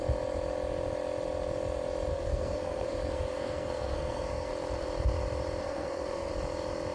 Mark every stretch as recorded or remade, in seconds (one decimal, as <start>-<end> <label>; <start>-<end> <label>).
0.0-2.1 recorded; 2.1-4.5 remade; 4.5-5.6 recorded; 5.6-6.3 remade; 6.3-6.9 recorded